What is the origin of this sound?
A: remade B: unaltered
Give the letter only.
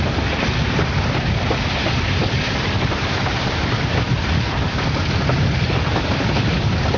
B